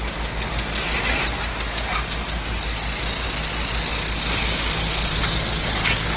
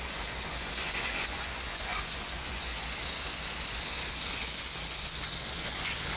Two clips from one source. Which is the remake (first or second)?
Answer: second